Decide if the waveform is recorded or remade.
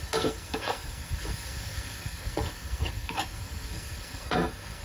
remade